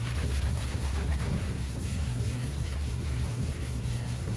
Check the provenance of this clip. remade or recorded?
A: remade